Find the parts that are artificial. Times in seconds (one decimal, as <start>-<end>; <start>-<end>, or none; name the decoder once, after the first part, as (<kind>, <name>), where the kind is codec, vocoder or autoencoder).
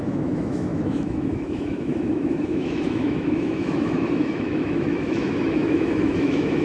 0.0-6.6 (autoencoder, DAC-VAE)